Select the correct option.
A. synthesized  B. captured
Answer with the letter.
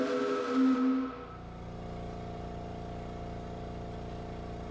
B